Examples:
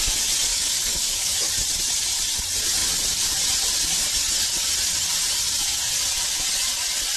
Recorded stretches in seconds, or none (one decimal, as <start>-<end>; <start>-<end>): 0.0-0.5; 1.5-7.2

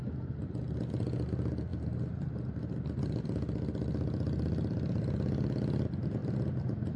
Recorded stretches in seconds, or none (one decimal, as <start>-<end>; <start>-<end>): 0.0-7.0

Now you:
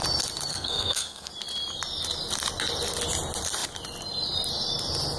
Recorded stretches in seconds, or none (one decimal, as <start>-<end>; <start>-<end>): 0.0-0.5; 1.3-5.2

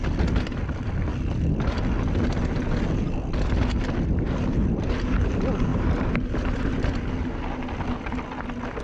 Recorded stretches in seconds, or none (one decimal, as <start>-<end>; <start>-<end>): 0.0-5.7; 6.8-8.8

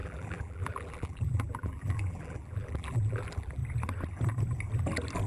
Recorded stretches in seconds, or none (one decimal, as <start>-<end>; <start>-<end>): 3.6-5.3